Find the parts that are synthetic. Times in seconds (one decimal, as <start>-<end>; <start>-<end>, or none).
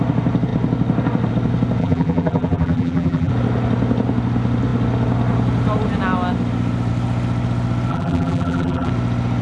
1.8-3.3; 7.9-8.9